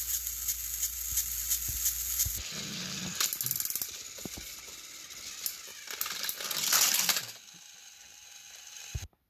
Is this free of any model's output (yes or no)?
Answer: yes